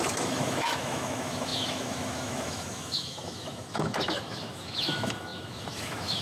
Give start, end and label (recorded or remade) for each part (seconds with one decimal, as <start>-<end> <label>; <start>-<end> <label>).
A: 0.0-6.2 remade